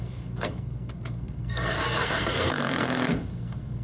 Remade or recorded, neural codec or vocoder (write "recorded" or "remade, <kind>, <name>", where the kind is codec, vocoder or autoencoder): remade, codec, SNAC